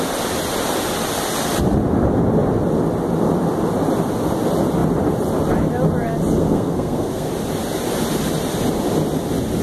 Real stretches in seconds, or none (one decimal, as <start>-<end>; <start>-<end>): 0.0-6.4; 7.3-9.6